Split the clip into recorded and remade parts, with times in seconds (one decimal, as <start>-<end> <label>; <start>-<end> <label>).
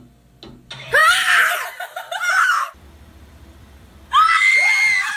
0.0-1.0 recorded; 1.0-4.1 remade; 4.1-5.2 recorded